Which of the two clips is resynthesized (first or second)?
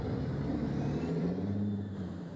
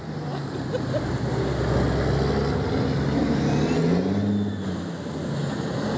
first